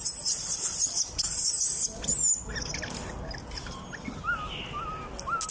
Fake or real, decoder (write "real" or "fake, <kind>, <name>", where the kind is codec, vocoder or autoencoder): real